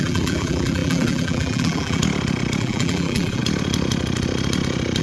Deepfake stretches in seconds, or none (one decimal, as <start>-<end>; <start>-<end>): 0.0-2.0; 2.6-3.4